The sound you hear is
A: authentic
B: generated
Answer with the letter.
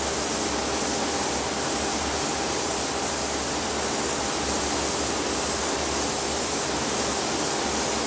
A